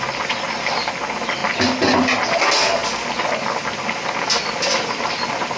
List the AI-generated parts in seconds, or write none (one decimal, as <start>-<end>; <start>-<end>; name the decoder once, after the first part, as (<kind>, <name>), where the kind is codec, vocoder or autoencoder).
none